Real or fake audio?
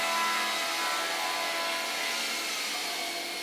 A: real